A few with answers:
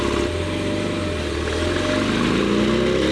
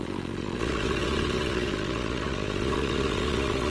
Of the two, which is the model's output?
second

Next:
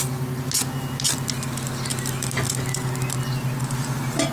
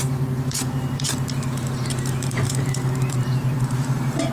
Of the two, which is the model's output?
second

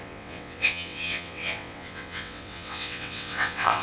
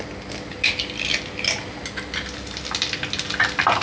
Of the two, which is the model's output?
first